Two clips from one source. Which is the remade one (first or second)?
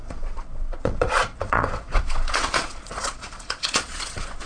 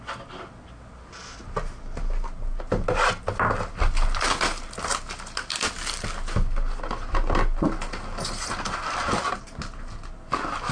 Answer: first